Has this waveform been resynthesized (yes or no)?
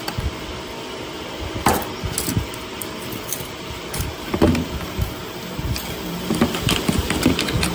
yes